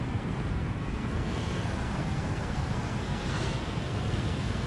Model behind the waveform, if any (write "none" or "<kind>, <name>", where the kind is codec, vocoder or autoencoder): codec, SNAC